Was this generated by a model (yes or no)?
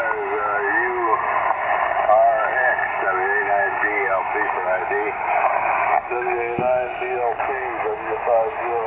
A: no